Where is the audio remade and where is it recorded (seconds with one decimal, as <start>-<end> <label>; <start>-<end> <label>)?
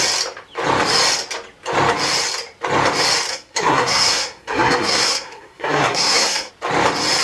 0.0-3.3 recorded; 3.3-6.5 remade; 6.5-7.2 recorded